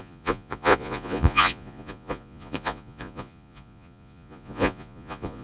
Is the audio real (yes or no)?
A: no